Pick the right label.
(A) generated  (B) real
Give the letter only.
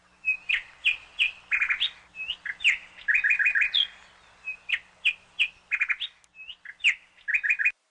B